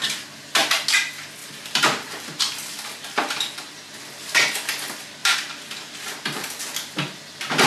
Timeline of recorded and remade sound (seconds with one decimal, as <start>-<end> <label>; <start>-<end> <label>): 0.0-1.4 recorded; 1.4-2.4 remade; 2.4-5.2 recorded; 5.2-6.7 remade; 6.7-7.7 recorded